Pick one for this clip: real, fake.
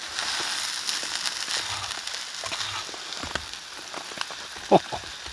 real